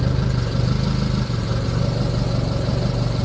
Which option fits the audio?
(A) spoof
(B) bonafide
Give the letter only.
B